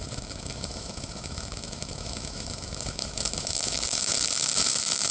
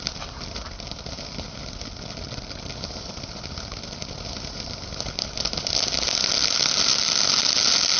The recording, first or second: second